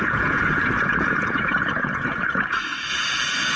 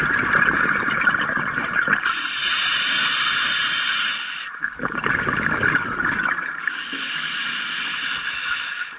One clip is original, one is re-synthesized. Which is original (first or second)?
second